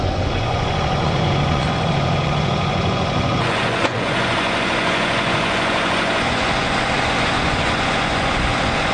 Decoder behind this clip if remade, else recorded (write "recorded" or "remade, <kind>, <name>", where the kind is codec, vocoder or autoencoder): remade, vocoder, Vocos